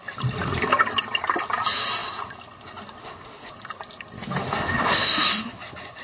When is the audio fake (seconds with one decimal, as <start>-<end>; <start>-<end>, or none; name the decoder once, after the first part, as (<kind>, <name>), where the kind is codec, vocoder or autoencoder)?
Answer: 3.0-3.5 (autoencoder, DAC-VAE); 4.2-5.6